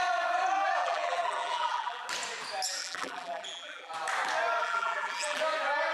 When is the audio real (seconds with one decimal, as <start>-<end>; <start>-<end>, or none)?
0.0-0.8; 2.0-2.8; 3.9-4.6; 5.4-5.9